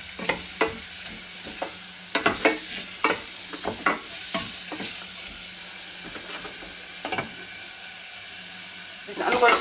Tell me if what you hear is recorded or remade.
recorded